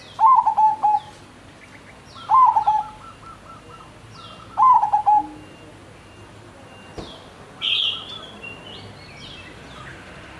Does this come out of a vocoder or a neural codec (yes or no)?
no